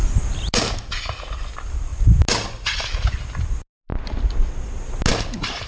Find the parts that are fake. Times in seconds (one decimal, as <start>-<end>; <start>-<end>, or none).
none